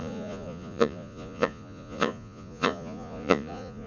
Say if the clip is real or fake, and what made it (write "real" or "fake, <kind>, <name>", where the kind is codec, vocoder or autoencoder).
fake, vocoder, Vocos